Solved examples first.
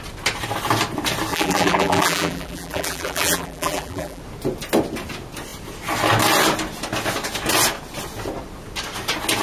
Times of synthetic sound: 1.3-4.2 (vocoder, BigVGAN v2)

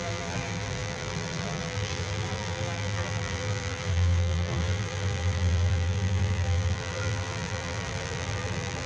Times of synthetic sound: 0.0-8.9 (vocoder, BigVGAN v2)

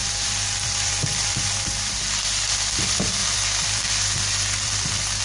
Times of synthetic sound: 0.0-2.0 (vocoder, BigVGAN v2); 3.2-5.2

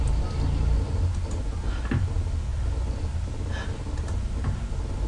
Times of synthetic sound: none

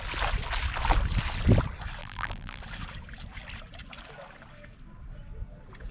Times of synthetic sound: 2.0-2.6 (vocoder, BigVGAN v2)

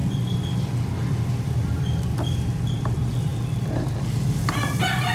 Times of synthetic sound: 0.9-5.1 (vocoder, BigVGAN v2)